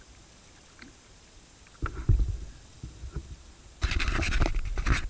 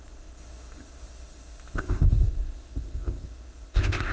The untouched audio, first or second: first